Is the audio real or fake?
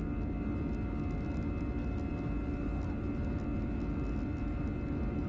real